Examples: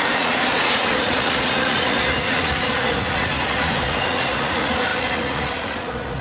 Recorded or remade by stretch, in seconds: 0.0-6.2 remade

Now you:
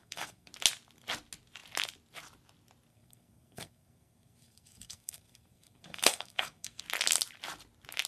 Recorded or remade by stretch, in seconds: 0.0-0.5 remade; 0.5-2.9 recorded; 2.9-6.8 remade; 6.8-8.1 recorded

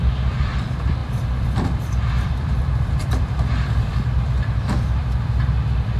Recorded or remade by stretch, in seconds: 0.0-1.0 recorded; 1.0-3.5 remade; 3.5-6.0 recorded

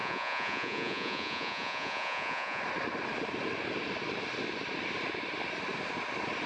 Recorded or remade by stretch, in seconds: 0.0-2.6 remade; 2.6-6.5 recorded

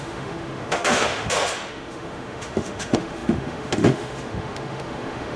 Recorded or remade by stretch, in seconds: 0.0-5.4 remade

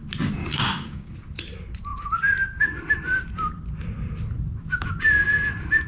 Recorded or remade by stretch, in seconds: 0.0-0.4 recorded; 0.4-1.1 remade; 1.1-5.9 recorded

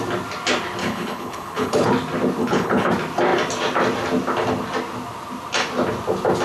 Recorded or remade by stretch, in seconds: 0.0-0.8 recorded; 0.8-1.9 remade; 1.9-2.4 recorded; 2.4-2.9 remade; 2.9-6.4 recorded

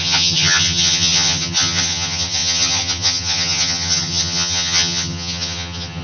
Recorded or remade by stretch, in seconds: 0.0-6.0 remade